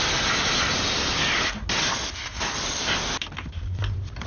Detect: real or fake real